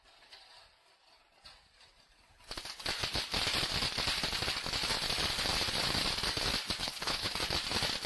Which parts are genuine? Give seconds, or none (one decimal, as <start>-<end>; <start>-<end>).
0.0-6.8; 7.3-8.1